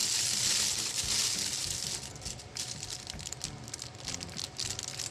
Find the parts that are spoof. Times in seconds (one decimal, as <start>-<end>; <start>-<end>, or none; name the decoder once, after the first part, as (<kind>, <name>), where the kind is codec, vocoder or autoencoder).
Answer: none